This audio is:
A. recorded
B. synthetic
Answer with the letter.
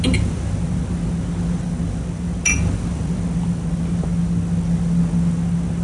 A